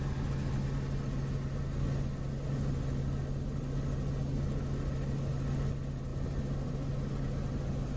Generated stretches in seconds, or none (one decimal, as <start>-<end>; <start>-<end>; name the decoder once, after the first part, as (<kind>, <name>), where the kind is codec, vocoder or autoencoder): none

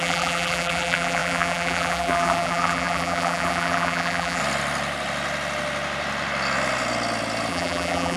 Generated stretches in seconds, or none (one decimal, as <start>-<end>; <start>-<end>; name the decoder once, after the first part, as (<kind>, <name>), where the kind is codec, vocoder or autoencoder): 0.0-4.4 (vocoder, BigVGAN v2); 7.5-8.2

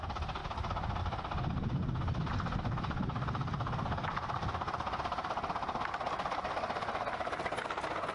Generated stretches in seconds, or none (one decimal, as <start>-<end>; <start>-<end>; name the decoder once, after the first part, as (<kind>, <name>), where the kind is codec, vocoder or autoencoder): none

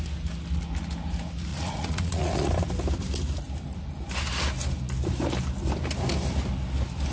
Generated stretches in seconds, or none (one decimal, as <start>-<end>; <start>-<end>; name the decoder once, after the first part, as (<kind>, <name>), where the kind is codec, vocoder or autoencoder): 1.5-2.5 (vocoder, Vocos)

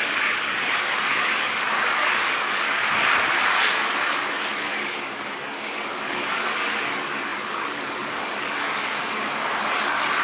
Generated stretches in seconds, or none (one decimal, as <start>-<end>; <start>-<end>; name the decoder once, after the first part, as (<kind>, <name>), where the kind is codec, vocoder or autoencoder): 0.0-2.8 (codec, DAC); 3.4-10.2

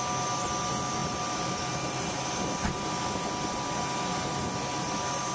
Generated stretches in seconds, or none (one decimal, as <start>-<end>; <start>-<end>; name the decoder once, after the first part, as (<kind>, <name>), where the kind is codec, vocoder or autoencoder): none

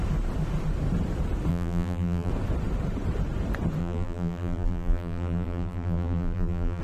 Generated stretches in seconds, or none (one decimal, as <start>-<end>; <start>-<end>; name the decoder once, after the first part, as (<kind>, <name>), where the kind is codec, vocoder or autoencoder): 1.5-2.3 (vocoder, BigVGAN v2); 3.8-6.8